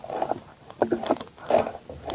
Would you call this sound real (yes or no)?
yes